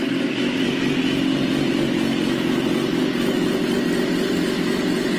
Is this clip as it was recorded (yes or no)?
yes